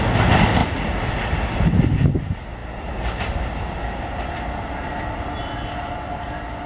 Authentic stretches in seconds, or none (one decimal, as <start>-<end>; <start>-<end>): 0.0-0.6; 1.4-6.7